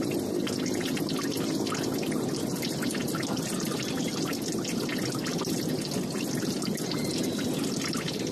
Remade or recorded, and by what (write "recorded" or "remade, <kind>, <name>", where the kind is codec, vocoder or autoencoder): recorded